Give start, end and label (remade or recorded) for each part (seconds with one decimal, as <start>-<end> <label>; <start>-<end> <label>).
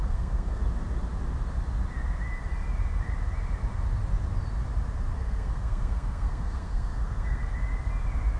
0.0-0.6 remade; 0.6-5.1 recorded; 5.1-7.5 remade; 7.5-8.4 recorded